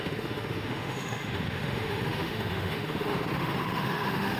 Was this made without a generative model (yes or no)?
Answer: no